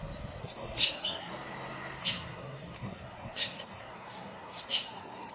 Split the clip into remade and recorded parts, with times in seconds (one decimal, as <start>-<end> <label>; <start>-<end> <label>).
0.0-0.4 recorded; 0.4-1.3 remade; 1.3-2.0 recorded; 2.0-5.3 remade